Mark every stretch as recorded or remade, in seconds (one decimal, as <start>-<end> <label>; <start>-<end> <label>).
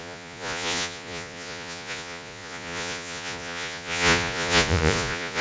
0.0-5.4 remade